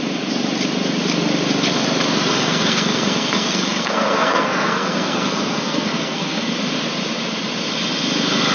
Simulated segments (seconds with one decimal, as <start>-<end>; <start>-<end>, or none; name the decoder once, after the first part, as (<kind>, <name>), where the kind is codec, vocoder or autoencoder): 2.3-6.5 (codec, SNAC)